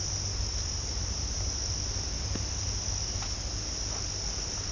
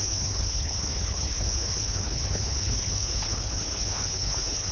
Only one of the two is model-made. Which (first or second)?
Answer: second